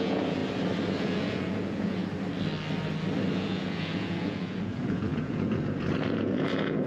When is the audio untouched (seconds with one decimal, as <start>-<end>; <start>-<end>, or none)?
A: 0.4-1.0; 2.0-3.3